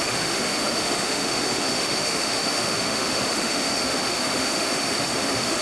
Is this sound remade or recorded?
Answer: remade